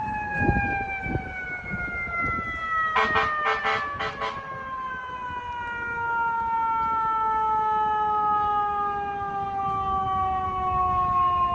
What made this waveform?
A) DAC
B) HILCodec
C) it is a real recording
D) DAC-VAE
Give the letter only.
C